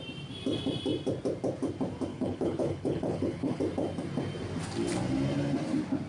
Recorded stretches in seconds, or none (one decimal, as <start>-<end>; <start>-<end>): 0.0-2.1; 3.6-6.1